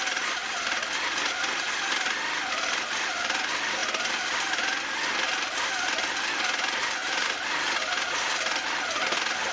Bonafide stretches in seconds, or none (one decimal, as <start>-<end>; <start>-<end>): 0.0-0.4; 1.4-9.5